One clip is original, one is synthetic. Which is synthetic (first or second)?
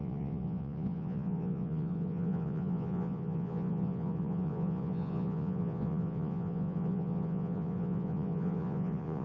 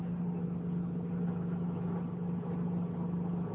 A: first